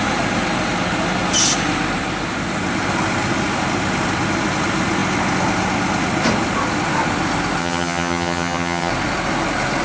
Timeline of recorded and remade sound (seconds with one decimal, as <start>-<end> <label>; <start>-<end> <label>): 0.0-7.6 recorded; 7.6-8.9 remade; 8.9-9.8 recorded